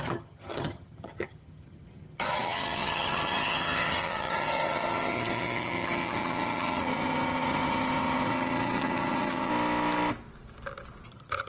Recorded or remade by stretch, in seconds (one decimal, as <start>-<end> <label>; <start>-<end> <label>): 0.0-9.5 remade; 9.5-11.1 recorded; 11.1-11.5 remade